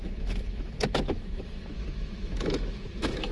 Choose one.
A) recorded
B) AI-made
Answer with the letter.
B